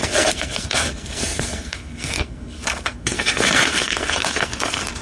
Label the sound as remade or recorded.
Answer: remade